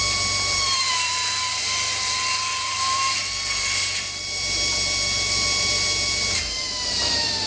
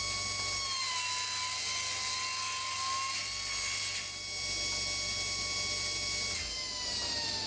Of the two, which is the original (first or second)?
second